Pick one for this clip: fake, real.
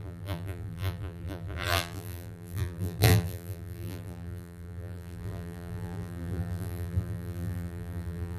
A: fake